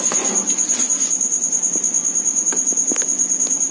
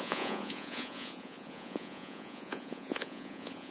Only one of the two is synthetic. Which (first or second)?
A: second